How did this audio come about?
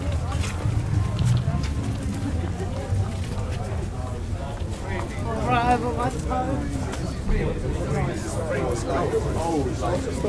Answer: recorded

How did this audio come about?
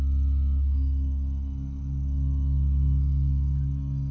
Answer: recorded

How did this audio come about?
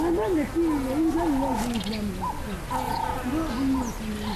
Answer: recorded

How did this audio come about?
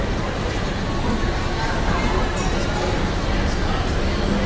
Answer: recorded